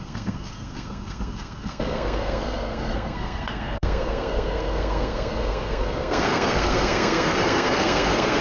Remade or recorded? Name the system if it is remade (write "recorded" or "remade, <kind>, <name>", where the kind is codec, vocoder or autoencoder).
remade, codec, SNAC